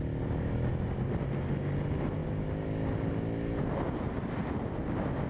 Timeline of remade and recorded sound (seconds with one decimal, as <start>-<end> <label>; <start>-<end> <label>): 0.0-5.3 recorded